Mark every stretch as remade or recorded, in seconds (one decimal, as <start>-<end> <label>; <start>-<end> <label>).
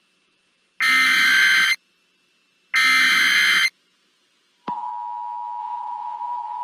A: 0.0-0.7 remade; 0.7-3.7 recorded; 3.7-4.9 remade; 4.9-5.6 recorded; 5.6-6.6 remade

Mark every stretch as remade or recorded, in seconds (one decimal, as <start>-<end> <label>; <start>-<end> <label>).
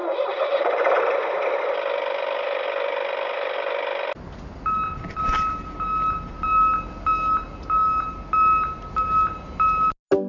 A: 0.0-1.0 remade; 1.0-10.3 recorded